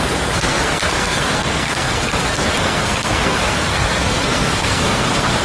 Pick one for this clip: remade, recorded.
remade